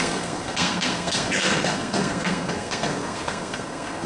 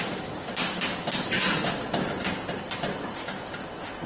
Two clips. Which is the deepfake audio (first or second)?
first